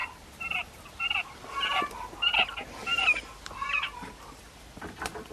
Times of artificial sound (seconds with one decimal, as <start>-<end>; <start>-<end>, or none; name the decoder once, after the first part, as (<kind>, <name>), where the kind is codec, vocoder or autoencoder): none